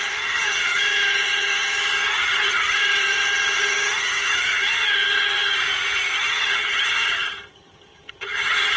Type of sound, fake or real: fake